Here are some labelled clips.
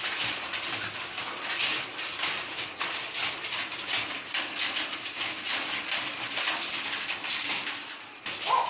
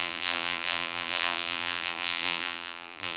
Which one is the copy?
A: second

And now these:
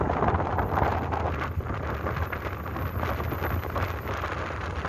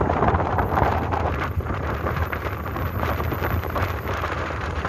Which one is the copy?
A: second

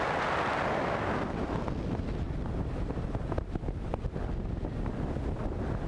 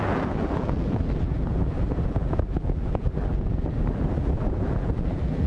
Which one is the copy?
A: second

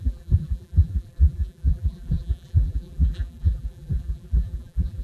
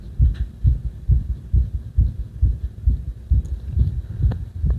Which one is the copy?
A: first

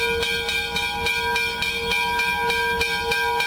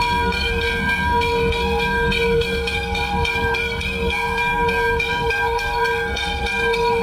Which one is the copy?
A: second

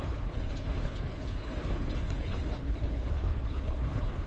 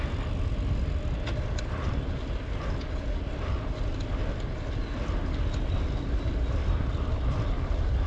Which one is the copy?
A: first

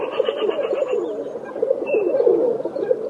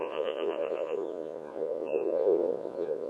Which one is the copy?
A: second